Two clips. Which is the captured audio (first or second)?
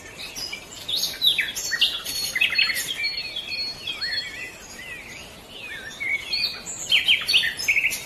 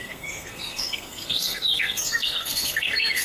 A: first